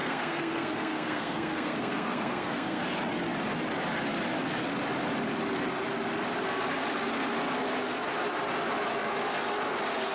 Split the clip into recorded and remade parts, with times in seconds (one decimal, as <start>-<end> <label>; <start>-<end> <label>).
0.0-2.8 remade; 2.8-10.1 recorded